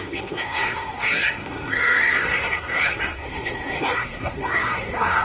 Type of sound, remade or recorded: remade